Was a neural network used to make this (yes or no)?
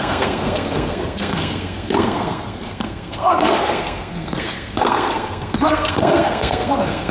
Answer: yes